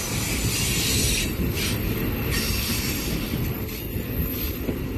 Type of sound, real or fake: real